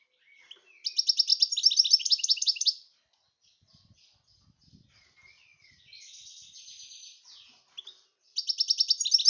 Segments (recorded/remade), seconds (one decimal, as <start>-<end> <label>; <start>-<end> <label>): 0.0-9.3 recorded